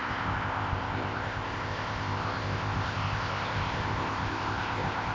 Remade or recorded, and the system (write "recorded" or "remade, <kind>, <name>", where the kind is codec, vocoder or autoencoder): remade, codec, ZipCodec